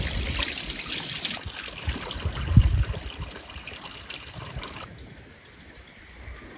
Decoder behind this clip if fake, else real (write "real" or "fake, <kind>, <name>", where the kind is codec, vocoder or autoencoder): real